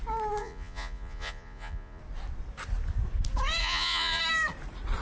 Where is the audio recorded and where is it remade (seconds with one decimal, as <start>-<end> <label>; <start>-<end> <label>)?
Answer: 0.0-0.4 recorded; 0.4-2.0 remade; 2.0-3.6 recorded; 3.6-4.2 remade; 4.2-5.0 recorded

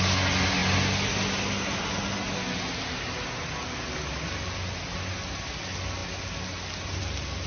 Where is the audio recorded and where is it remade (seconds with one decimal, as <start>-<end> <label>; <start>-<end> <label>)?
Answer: 0.0-7.5 recorded

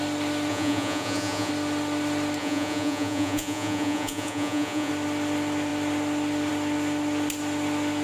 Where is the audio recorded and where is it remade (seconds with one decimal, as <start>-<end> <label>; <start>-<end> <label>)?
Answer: 0.0-0.5 recorded; 0.5-1.5 remade; 1.5-2.4 recorded; 2.4-4.9 remade; 4.9-8.0 recorded

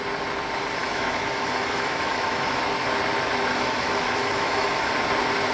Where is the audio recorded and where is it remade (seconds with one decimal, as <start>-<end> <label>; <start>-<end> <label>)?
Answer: 0.0-0.8 recorded; 0.8-2.6 remade; 2.6-3.5 recorded; 3.5-4.9 remade; 4.9-5.5 recorded

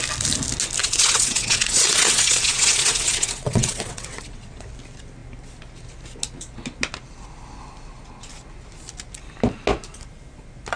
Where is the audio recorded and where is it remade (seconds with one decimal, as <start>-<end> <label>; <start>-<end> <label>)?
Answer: 0.0-0.8 recorded; 0.8-4.7 remade; 4.7-10.8 recorded

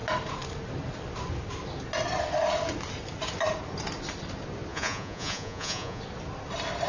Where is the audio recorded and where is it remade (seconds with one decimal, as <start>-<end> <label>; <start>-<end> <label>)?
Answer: 0.0-4.7 recorded; 4.7-6.0 remade; 6.0-6.9 recorded

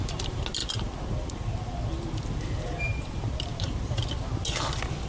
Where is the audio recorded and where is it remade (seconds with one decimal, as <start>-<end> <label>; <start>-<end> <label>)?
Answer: 0.0-5.1 recorded